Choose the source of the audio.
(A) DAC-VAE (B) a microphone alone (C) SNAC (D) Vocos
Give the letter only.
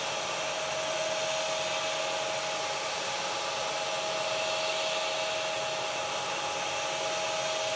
B